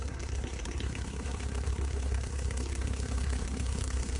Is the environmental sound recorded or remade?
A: remade